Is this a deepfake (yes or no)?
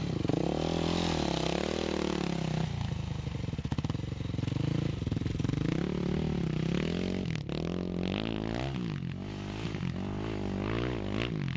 no